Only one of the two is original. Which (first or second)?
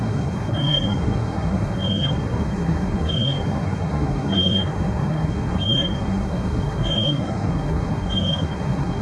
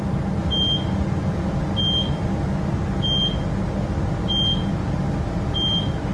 second